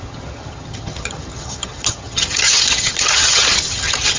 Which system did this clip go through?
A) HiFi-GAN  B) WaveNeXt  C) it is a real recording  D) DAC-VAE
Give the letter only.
A